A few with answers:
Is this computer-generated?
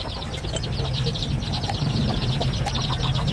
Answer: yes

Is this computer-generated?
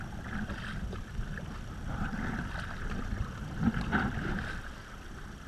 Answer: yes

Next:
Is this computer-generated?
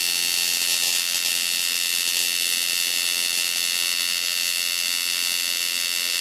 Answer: no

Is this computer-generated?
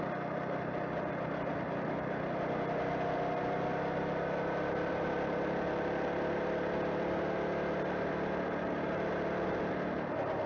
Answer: no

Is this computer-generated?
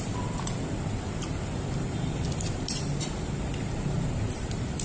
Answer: yes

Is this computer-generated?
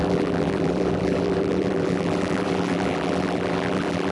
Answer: yes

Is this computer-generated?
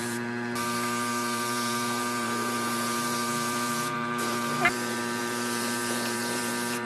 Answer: yes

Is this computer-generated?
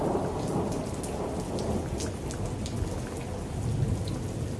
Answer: no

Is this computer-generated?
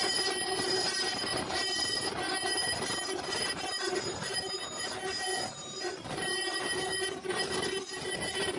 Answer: yes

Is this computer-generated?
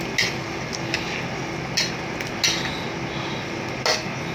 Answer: no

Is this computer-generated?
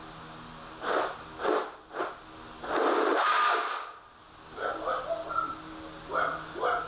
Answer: no